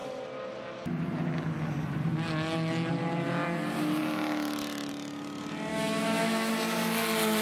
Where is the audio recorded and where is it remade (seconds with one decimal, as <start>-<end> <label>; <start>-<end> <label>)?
0.0-5.7 recorded; 5.7-6.5 remade; 6.5-7.4 recorded